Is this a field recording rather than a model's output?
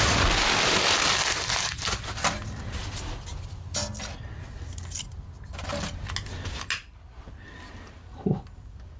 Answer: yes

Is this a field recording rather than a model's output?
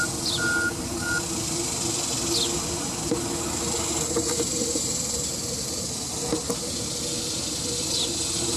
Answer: yes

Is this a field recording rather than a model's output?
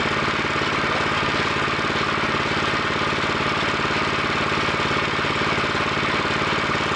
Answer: yes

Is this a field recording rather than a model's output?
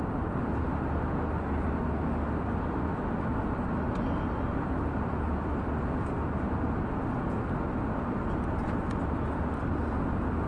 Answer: yes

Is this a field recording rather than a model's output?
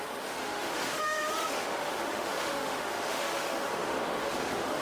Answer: no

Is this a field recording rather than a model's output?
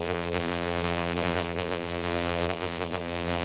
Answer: no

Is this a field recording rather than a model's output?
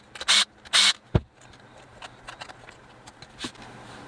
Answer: yes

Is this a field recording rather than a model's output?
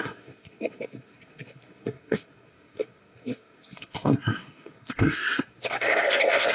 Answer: no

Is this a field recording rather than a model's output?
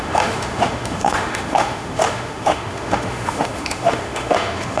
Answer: no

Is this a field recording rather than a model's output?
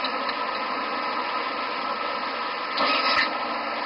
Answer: yes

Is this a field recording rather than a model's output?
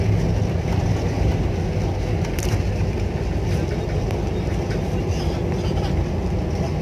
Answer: yes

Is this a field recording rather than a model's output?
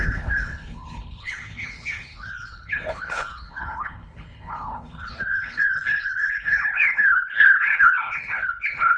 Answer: no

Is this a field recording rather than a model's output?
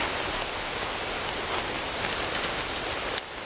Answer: yes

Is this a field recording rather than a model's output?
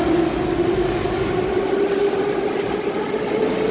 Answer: yes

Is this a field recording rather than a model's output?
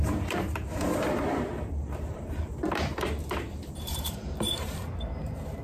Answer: no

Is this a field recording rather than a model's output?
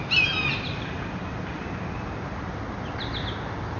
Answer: yes